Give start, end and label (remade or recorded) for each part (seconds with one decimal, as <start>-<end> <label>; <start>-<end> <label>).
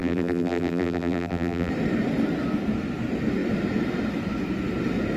0.0-1.7 remade; 1.7-5.2 recorded